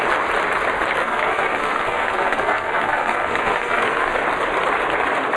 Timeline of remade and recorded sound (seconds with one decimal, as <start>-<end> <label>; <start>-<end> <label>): 0.0-1.0 recorded; 1.0-4.2 remade; 4.2-5.4 recorded